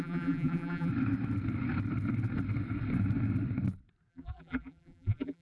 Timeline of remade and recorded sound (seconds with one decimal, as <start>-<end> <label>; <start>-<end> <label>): 0.0-0.9 remade; 0.9-4.1 recorded; 4.1-5.4 remade